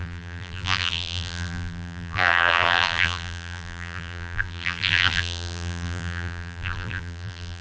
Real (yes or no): no